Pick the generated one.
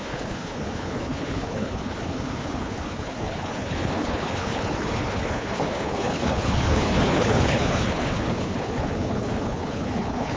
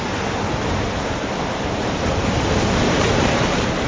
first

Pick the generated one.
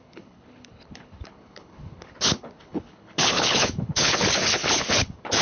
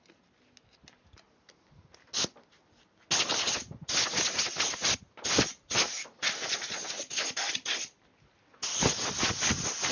first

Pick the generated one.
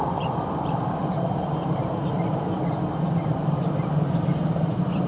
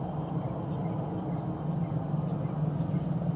first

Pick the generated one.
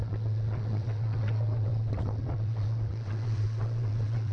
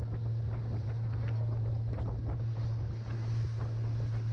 first